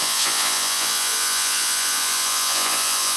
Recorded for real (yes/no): no